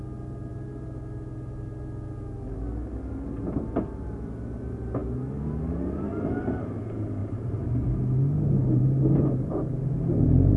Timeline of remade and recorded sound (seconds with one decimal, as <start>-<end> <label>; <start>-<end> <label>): 0.0-7.2 recorded; 7.2-7.8 remade; 7.8-10.6 recorded